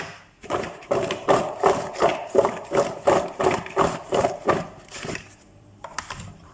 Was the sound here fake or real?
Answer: fake